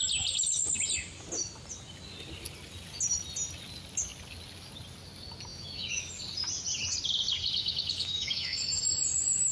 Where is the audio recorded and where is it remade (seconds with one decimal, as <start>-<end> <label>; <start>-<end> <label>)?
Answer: 0.0-5.5 recorded; 5.5-6.1 remade; 6.1-7.6 recorded; 7.6-8.8 remade; 8.8-9.5 recorded